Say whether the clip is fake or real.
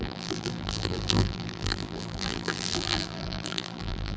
fake